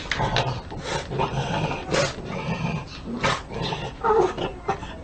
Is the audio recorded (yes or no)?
yes